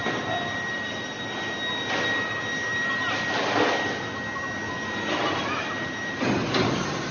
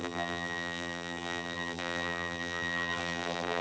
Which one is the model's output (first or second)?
second